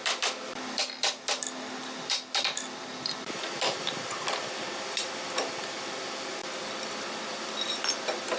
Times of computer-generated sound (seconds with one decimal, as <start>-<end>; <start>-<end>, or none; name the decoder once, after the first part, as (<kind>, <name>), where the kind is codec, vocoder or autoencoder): none